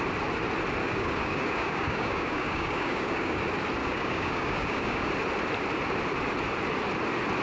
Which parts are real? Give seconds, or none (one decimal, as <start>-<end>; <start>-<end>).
0.0-0.8; 3.4-3.8; 5.1-7.4